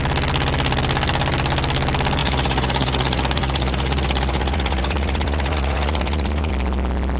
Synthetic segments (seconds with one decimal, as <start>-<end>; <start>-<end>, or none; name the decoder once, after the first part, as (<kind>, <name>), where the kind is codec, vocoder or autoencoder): 2.2-6.5 (vocoder, Vocos)